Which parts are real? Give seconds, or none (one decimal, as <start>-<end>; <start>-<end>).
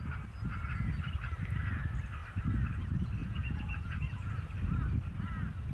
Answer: 0.0-3.2; 4.3-5.7